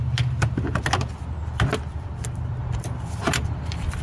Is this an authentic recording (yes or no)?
yes